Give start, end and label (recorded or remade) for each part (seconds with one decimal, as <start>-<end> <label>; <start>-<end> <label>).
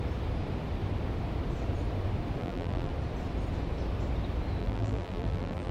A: 0.0-2.4 recorded; 2.4-2.9 remade; 2.9-4.6 recorded; 4.6-5.7 remade